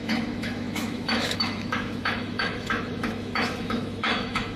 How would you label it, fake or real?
fake